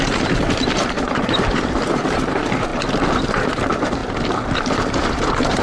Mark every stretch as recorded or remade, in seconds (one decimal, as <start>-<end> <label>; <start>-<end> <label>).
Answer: 0.0-2.7 remade; 2.7-3.2 recorded; 3.2-4.0 remade; 4.0-5.1 recorded; 5.1-5.6 remade